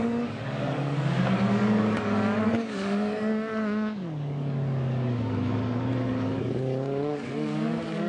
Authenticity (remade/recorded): remade